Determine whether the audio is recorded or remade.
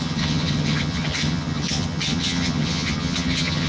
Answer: remade